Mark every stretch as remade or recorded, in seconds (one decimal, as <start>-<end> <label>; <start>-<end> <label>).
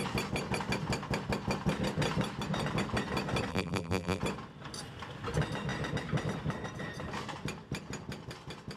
0.0-3.5 recorded; 3.5-4.2 remade; 4.2-8.8 recorded